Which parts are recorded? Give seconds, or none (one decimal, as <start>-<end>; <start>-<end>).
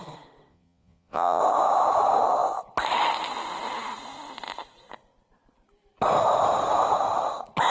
0.0-0.5; 1.4-7.7